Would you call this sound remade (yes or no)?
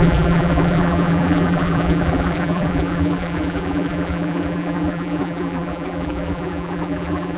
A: yes